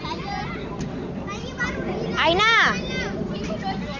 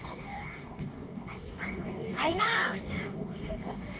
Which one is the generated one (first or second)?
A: second